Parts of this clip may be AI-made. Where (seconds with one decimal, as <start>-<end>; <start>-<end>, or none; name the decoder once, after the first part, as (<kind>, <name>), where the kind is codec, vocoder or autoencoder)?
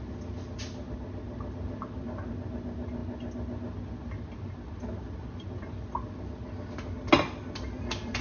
none